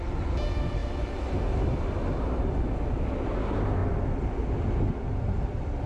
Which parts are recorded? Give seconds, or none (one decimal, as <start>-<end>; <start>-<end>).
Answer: 0.0-5.9